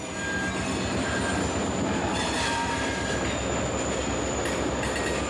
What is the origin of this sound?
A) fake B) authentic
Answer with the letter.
B